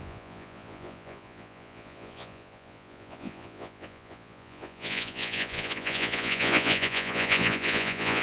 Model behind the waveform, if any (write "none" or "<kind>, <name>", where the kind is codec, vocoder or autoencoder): vocoder, Vocos